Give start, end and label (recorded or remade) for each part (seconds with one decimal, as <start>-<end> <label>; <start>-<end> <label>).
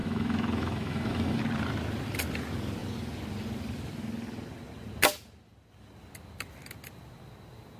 0.0-1.4 remade; 1.4-7.8 recorded